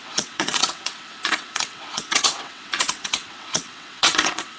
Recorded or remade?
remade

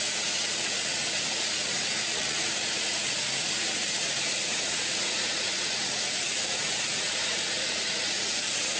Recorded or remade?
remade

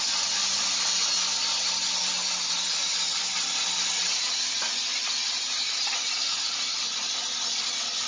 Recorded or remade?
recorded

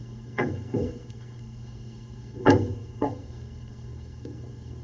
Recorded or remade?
remade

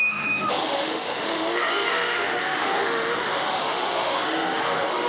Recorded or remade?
remade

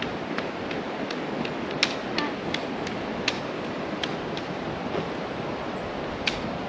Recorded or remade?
recorded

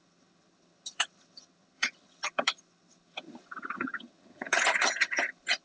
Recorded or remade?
remade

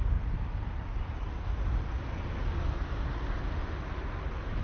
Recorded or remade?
recorded